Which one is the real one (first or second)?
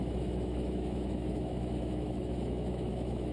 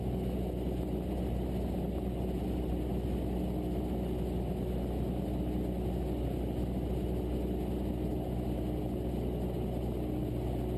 second